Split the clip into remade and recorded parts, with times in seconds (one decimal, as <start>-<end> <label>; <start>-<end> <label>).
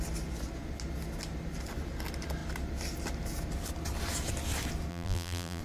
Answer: 0.0-4.9 recorded; 4.9-5.6 remade